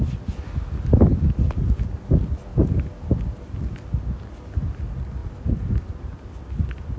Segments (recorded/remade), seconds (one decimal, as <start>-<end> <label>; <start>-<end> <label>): 0.0-7.0 recorded